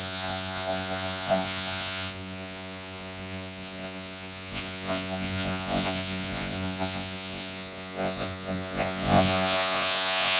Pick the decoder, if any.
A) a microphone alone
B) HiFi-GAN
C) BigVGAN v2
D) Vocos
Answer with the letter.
D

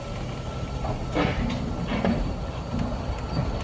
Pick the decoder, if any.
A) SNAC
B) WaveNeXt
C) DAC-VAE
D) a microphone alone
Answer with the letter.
D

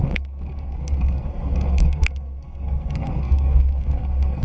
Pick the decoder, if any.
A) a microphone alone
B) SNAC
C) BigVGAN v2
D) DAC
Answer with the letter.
B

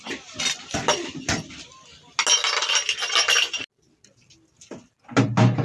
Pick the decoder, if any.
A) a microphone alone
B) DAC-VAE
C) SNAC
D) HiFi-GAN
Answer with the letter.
A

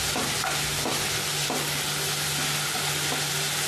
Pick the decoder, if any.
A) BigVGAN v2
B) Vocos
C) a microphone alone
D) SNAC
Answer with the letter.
C